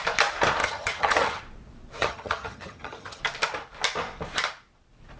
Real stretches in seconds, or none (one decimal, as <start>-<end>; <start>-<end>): 0.0-0.6; 1.4-2.0; 3.2-5.2